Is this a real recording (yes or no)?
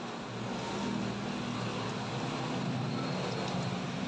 yes